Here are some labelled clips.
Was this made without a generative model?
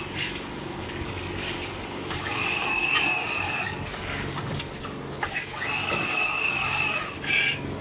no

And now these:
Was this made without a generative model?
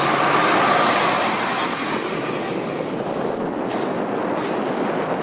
yes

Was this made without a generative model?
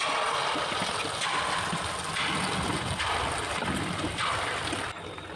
yes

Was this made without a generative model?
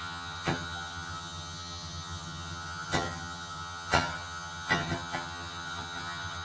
no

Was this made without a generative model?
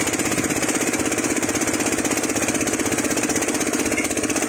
yes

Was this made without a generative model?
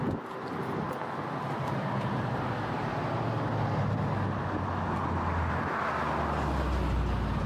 yes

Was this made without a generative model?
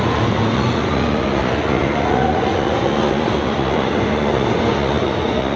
no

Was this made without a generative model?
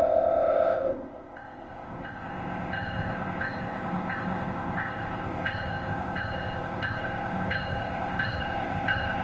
no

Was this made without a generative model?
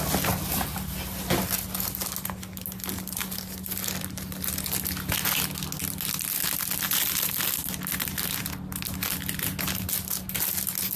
yes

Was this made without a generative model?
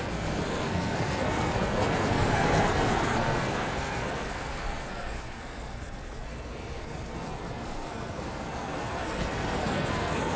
no